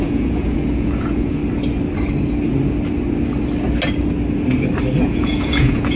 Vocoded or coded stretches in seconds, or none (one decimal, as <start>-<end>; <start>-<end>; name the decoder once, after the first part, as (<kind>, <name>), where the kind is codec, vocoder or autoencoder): 0.0-1.4 (vocoder, Vocos); 5.0-6.0